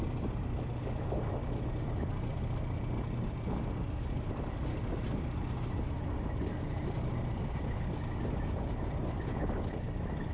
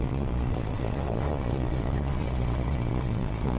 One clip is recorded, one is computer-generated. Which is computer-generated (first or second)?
second